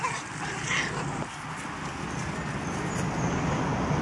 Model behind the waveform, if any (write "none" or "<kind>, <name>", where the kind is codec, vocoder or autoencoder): none